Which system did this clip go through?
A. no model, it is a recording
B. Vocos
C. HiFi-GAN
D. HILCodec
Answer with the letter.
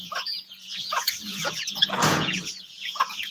B